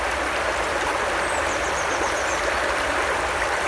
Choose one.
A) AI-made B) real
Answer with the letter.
B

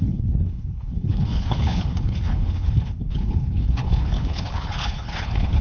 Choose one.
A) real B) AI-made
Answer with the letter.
B